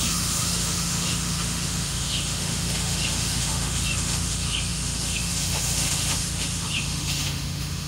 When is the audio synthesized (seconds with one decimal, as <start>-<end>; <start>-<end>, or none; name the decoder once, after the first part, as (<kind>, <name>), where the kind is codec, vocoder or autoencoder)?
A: 0.0-7.9 (autoencoder, DAC-VAE)